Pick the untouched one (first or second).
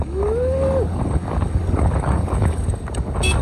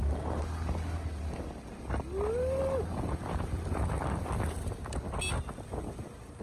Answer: second